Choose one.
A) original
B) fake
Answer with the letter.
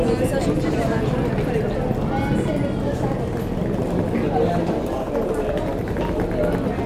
A